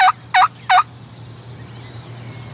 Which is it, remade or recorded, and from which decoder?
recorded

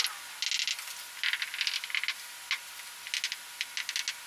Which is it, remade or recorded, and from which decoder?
recorded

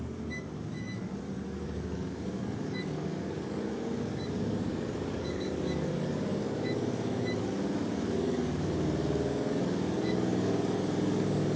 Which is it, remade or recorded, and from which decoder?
remade, codec, DAC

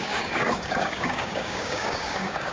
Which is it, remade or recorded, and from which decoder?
remade, codec, DAC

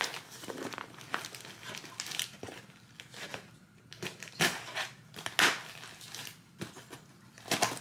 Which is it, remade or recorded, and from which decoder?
recorded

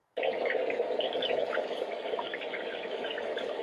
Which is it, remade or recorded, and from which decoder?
remade, codec, DAC